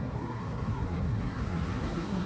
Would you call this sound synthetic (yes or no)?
yes